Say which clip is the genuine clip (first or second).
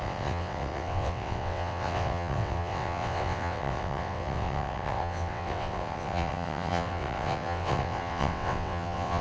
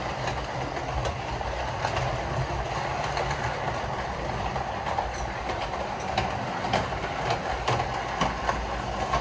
second